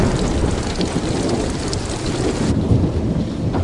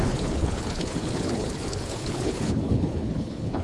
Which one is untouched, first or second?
first